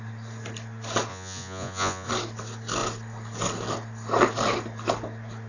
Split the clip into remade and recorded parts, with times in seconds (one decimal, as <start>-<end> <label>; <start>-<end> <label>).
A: 0.0-1.1 recorded; 1.1-2.1 remade; 2.1-5.5 recorded